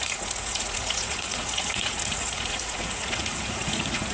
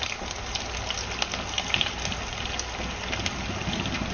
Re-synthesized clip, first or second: first